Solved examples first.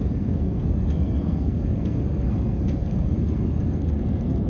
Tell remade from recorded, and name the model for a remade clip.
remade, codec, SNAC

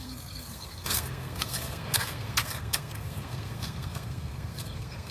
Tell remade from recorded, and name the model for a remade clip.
remade, codec, SNAC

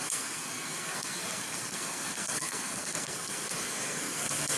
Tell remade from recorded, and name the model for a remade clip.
remade, codec, SNAC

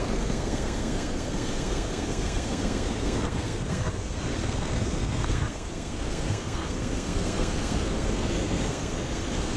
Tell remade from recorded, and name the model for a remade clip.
remade, codec, SNAC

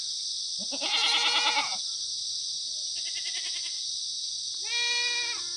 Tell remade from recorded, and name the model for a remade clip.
recorded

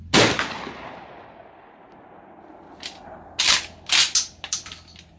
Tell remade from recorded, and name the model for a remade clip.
recorded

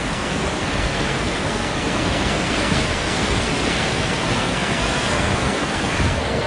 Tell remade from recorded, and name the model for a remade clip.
remade, codec, SNAC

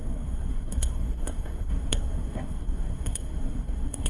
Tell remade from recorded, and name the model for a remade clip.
remade, codec, SNAC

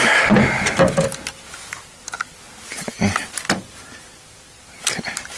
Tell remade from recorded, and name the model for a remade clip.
recorded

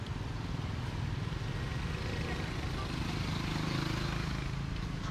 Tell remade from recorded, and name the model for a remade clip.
recorded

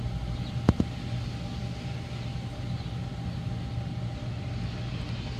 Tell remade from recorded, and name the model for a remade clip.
recorded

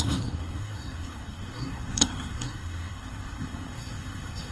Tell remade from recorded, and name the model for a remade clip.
remade, codec, SNAC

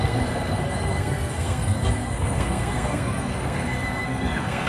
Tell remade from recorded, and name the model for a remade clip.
remade, codec, SNAC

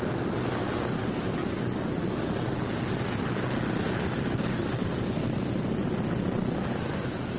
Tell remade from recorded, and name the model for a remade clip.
recorded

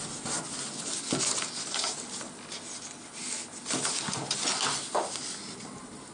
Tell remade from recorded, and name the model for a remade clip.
recorded